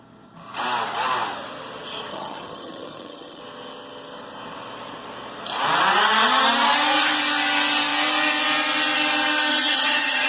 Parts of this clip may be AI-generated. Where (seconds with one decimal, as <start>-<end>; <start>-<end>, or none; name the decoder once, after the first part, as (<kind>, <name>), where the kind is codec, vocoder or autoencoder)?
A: 2.1-3.4 (vocoder, HiFi-GAN); 9.5-10.3